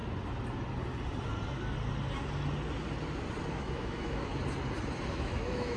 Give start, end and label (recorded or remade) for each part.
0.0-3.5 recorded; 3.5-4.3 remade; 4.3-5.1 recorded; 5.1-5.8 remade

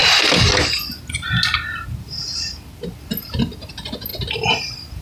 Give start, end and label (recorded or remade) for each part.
0.0-5.0 recorded

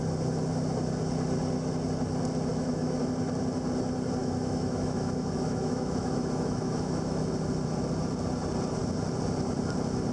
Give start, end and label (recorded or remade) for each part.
0.0-2.5 recorded; 2.5-3.0 remade; 3.0-4.2 recorded; 4.2-7.3 remade; 7.3-10.1 recorded

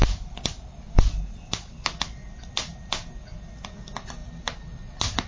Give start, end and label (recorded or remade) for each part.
0.0-5.3 recorded

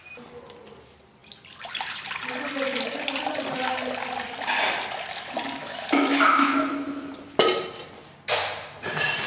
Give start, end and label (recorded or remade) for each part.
0.0-5.6 recorded; 5.6-7.1 remade; 7.1-9.3 recorded

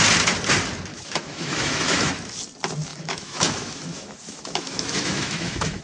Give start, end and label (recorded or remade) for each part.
0.0-0.9 recorded; 0.9-2.1 remade; 2.1-2.9 recorded; 2.9-5.8 remade

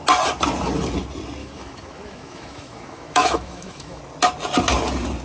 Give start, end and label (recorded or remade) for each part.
0.0-1.4 recorded; 1.4-4.0 remade; 4.0-5.2 recorded

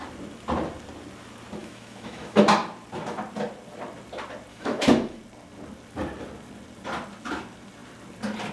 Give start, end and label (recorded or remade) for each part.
0.0-1.6 recorded; 1.6-2.4 remade; 2.4-4.5 recorded; 4.5-5.2 remade; 5.2-8.5 recorded